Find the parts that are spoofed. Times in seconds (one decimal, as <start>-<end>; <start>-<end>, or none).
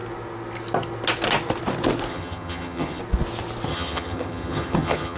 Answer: 2.1-3.0; 3.7-5.2